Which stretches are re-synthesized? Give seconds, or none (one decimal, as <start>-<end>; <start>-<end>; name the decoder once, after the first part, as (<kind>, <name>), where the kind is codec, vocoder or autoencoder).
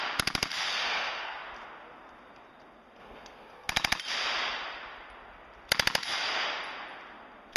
0.7-1.4 (codec, SNAC); 3.0-3.7